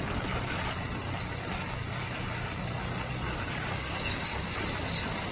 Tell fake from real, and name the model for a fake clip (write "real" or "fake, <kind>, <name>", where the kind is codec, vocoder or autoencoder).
real